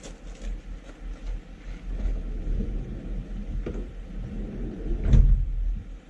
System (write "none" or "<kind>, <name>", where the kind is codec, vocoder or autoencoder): none